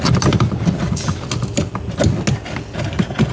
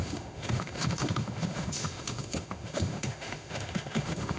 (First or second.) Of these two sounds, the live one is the first